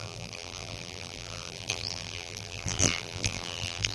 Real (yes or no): no